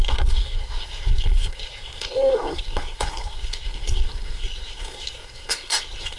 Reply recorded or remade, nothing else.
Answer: remade